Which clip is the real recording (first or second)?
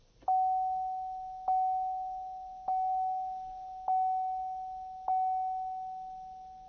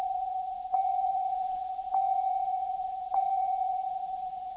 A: first